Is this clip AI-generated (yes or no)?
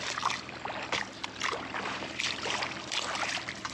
no